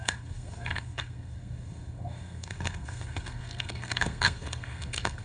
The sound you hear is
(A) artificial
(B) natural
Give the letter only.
A